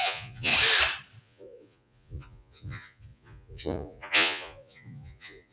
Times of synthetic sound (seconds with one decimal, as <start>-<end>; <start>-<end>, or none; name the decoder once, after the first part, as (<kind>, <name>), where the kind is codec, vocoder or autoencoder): 0.0-0.5 (vocoder, Vocos); 1.2-5.5